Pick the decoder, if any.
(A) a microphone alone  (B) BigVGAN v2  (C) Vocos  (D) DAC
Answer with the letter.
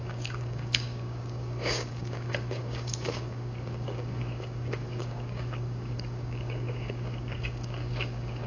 D